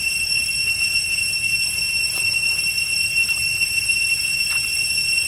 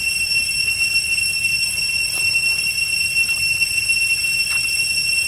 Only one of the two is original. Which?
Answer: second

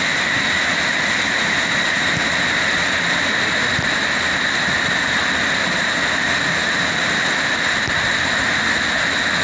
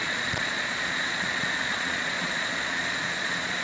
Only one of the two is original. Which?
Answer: first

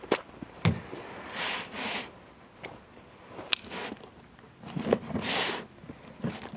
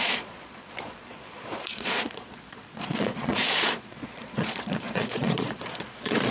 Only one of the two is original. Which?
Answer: first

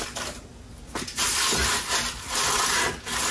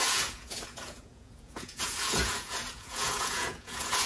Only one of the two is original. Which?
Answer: first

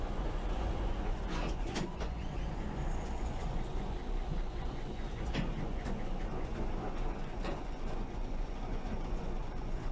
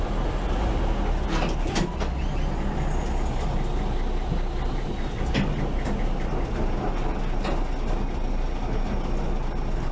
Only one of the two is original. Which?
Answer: second